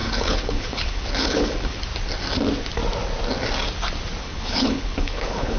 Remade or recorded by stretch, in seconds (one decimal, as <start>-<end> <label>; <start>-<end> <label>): 0.0-1.8 remade; 1.8-4.2 recorded; 4.2-5.6 remade